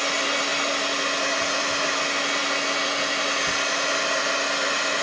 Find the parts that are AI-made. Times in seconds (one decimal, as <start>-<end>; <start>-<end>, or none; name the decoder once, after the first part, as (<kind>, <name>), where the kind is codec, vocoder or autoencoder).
none